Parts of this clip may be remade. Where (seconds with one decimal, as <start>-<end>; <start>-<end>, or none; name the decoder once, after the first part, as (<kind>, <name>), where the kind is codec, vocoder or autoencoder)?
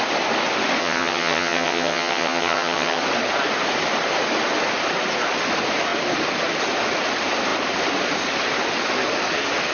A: 0.8-3.0 (vocoder, HiFi-GAN)